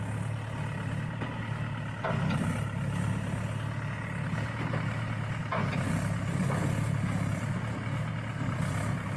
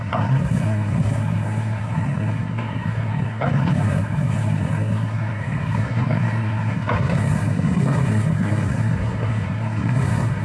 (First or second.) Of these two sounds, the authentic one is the first